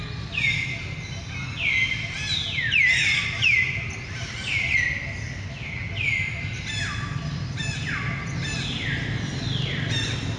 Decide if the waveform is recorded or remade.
recorded